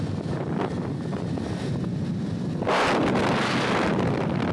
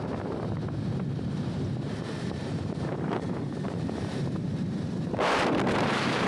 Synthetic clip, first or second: second